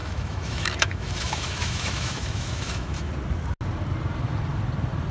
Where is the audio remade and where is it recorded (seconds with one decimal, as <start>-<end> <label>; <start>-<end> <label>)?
0.0-3.1 remade; 3.1-5.1 recorded